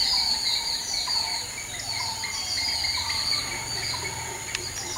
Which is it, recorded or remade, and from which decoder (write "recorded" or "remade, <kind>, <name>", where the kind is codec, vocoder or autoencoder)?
recorded